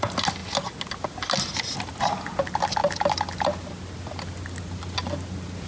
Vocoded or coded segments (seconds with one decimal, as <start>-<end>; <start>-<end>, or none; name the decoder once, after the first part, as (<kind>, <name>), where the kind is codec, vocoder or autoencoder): none